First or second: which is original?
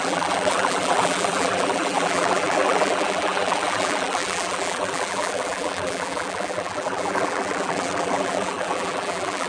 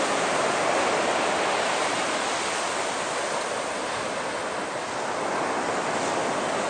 second